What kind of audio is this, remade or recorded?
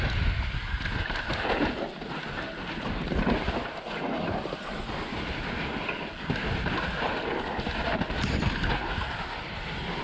recorded